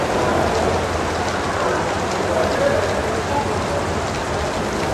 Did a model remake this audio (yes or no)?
no